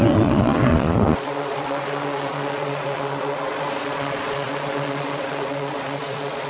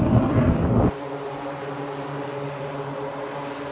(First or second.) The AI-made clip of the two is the first